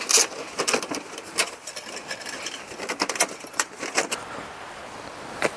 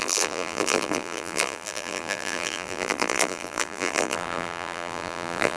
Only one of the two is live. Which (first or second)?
first